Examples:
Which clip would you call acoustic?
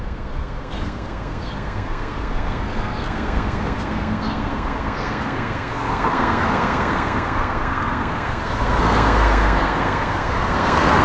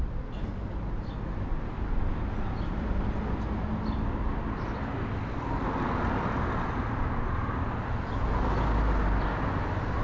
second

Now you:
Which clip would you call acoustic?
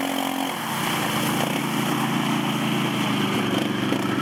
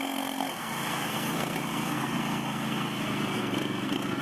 first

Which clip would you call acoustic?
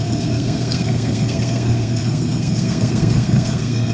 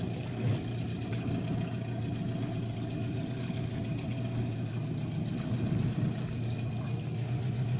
second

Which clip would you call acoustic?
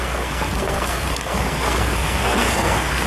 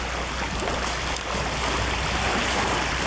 second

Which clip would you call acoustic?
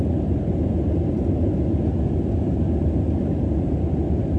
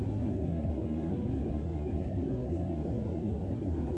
first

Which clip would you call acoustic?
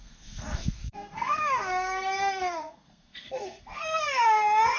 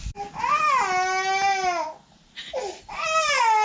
second